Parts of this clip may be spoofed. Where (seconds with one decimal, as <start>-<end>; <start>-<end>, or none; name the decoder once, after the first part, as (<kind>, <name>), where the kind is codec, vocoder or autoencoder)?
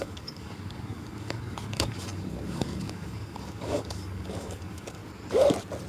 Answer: 0.0-5.0 (codec, DAC)